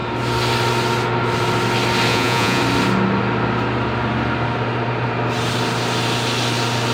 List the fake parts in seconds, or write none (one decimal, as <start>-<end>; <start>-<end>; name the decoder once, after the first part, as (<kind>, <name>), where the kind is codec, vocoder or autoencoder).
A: 2.1-2.6 (vocoder, Vocos)

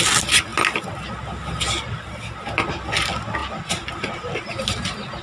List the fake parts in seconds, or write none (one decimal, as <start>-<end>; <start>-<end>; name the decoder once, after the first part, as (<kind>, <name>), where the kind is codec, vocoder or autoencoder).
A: 3.4-4.6 (vocoder, BigVGAN v2)

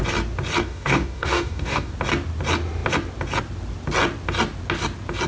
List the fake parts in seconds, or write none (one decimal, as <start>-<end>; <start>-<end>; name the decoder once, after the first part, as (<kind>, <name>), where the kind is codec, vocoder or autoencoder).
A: 0.6-1.9 (codec, DAC)

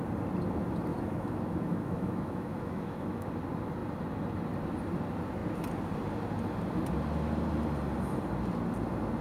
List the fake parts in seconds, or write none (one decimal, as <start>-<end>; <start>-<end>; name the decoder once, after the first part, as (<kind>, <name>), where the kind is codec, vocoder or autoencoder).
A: 0.9-3.3 (autoencoder, DAC-VAE)

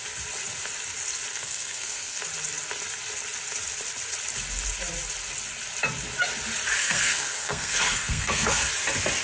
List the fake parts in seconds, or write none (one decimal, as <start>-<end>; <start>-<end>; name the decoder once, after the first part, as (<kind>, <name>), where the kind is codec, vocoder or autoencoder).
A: 1.3-2.2 (codec, SNAC); 6.8-8.7

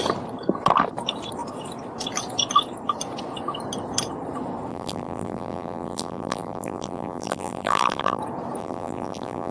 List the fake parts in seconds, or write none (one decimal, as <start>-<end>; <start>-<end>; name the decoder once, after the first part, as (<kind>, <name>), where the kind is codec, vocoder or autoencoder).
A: 4.7-8.2 (vocoder, BigVGAN v2); 8.6-9.5